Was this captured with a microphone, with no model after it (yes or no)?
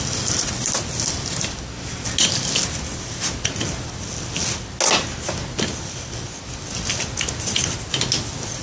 yes